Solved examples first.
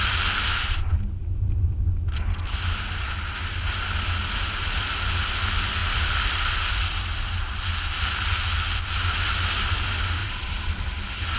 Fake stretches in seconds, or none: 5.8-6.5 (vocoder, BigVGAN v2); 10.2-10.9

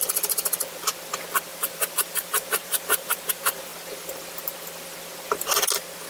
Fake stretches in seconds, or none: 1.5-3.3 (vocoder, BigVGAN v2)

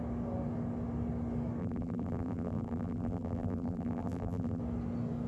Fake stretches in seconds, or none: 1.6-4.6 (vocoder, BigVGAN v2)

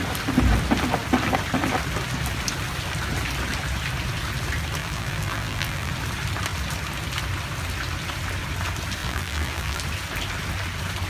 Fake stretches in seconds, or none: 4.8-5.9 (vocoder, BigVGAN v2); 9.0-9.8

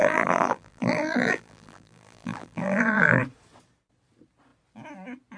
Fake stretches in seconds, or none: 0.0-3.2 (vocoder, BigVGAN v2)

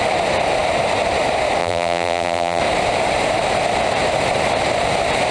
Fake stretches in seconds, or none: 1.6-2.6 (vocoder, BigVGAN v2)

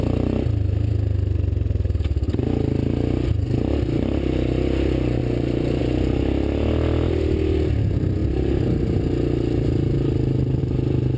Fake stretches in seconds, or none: 5.2-5.8 (vocoder, BigVGAN v2)

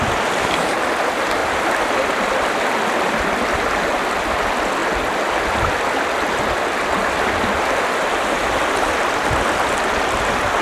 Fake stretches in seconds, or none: 1.4-4.0 (vocoder, BigVGAN v2); 4.8-5.3